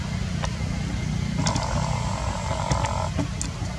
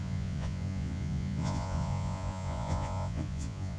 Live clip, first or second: first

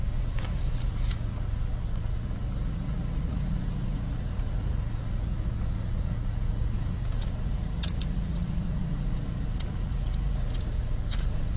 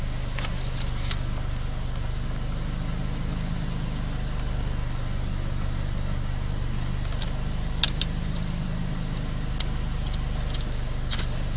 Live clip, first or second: second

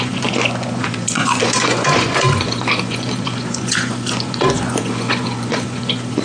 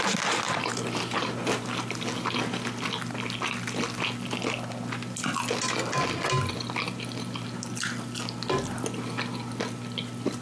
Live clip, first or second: second